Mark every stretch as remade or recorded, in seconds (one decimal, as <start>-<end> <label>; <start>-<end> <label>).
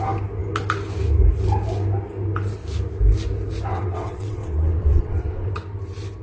0.0-3.7 recorded; 3.7-5.5 remade; 5.5-6.2 recorded